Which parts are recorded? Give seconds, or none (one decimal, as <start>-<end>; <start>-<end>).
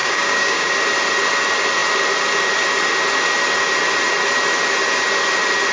0.7-5.7